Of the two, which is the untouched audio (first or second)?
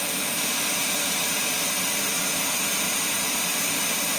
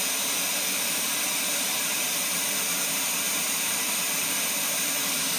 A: first